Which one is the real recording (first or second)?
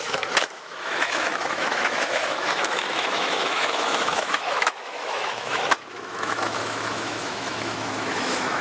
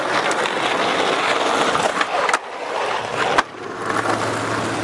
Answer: second